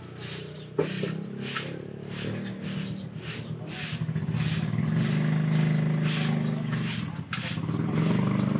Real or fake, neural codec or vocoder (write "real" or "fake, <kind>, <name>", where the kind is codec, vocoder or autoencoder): real